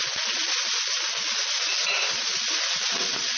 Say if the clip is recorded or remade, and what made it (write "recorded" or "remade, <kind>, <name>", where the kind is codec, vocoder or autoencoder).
recorded